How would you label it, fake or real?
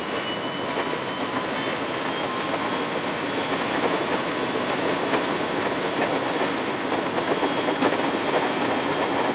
real